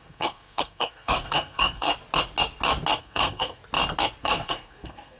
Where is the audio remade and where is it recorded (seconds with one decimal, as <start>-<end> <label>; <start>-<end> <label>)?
0.0-1.9 remade; 1.9-3.0 recorded; 3.0-3.6 remade; 3.6-4.2 recorded; 4.2-5.2 remade